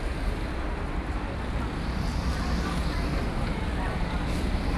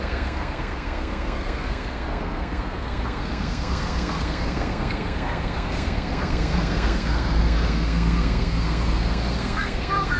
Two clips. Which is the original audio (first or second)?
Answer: first